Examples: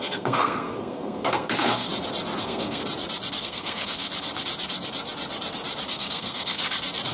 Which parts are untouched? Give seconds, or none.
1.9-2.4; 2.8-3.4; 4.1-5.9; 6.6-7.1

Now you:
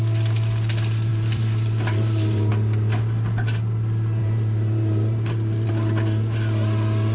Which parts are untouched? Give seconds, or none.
0.0-1.1; 2.5-4.2; 5.7-7.1

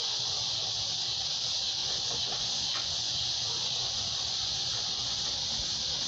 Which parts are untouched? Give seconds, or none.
0.6-1.8; 5.2-6.1

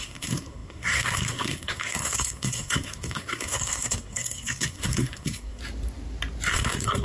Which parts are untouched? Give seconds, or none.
5.6-6.5

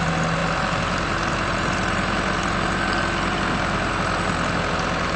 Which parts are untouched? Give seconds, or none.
0.0-5.2

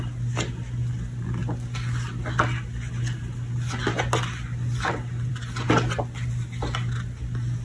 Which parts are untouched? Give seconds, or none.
0.0-7.6